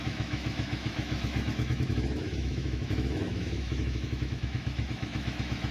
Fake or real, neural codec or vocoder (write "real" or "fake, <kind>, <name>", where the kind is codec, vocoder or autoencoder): fake, autoencoder, DAC-VAE